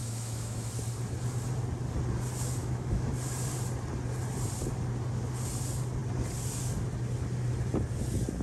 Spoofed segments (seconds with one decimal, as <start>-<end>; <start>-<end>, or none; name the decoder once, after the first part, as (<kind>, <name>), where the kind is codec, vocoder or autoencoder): 0.0-0.7 (autoencoder, DAC-VAE); 2.6-3.1